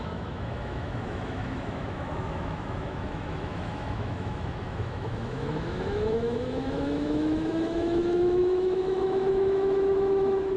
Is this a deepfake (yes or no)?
yes